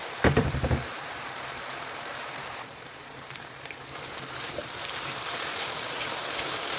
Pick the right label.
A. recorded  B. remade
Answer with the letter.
B